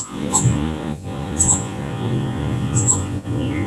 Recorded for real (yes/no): no